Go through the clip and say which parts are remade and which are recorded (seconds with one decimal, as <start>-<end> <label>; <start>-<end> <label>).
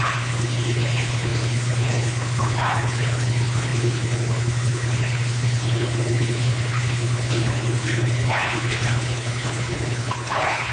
0.0-10.7 remade